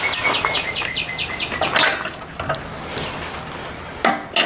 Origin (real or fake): real